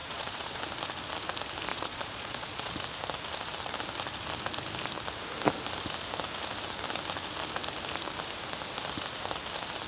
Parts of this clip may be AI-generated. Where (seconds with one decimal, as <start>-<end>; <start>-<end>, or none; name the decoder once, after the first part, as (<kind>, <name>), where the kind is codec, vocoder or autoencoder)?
0.0-0.6 (vocoder, Vocos); 1.7-2.7